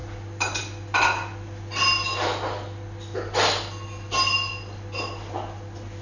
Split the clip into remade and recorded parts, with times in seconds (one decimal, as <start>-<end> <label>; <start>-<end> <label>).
0.0-6.0 recorded